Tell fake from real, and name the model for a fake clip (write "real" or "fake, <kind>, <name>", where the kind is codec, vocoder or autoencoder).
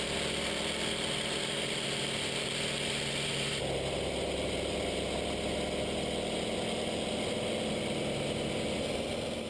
real